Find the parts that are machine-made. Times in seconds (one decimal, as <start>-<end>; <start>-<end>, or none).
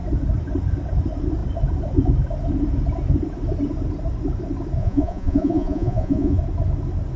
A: 4.8-6.4